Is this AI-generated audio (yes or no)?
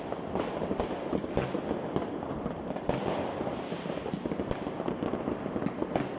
no